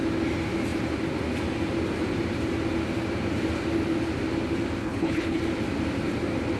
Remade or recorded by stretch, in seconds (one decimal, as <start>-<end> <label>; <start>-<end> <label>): 0.0-4.8 recorded; 4.8-5.4 remade; 5.4-6.6 recorded